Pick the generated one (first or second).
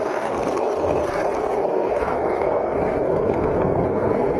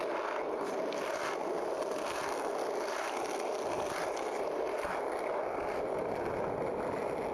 first